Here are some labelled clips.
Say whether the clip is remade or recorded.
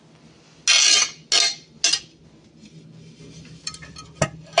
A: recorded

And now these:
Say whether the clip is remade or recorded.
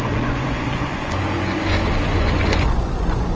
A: remade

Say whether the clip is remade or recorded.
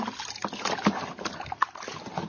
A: recorded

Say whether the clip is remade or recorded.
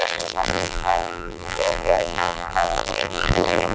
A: remade